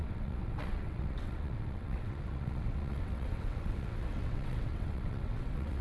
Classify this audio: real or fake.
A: fake